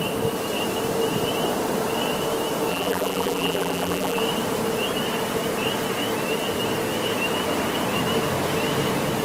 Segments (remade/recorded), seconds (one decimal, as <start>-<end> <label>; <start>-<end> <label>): 0.0-2.7 recorded; 2.7-4.2 remade; 4.2-9.2 recorded